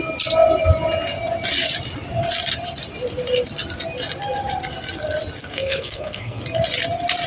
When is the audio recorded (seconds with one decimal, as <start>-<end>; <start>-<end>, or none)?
0.0-5.4; 6.4-7.3